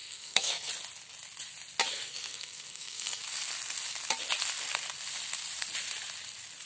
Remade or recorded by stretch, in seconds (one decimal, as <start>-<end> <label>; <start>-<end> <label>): 0.0-0.7 remade; 0.7-1.9 recorded; 1.9-3.2 remade; 3.2-6.7 recorded